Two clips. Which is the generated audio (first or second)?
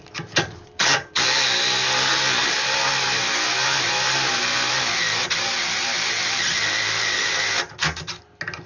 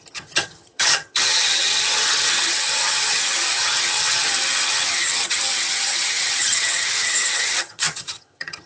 second